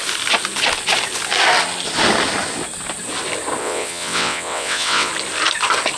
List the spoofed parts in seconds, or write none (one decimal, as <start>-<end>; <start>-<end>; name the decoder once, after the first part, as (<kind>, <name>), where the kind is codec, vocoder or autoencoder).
3.6-5.1 (vocoder, WaveNeXt)